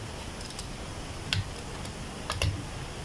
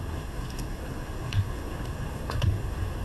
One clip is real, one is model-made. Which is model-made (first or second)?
second